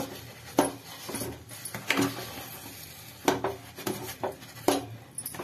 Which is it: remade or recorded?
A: recorded